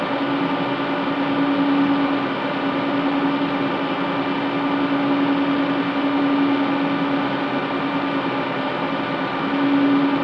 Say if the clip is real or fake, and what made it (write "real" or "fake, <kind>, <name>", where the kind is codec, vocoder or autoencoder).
real